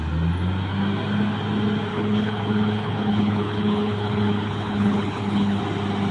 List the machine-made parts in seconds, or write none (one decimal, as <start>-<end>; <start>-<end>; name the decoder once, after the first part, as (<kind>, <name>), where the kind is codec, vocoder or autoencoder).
1.9-5.6 (codec, HILCodec)